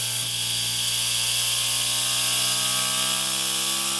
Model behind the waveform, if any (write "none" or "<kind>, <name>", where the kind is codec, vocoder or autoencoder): none